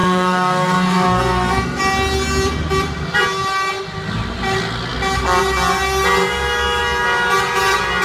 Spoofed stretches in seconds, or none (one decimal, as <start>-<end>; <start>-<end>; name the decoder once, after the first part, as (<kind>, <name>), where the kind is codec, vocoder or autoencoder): 0.0-1.8 (codec, SNAC)